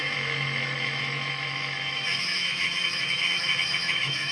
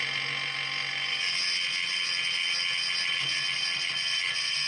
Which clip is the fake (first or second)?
first